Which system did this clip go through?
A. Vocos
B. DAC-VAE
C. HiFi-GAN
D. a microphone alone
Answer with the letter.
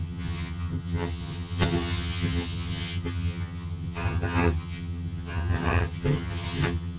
C